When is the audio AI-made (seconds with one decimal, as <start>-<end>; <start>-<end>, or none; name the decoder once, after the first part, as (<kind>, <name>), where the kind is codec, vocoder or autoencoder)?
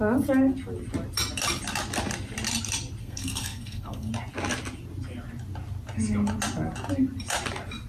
3.0-4.1 (codec, SNAC)